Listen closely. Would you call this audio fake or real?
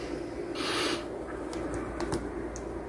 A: real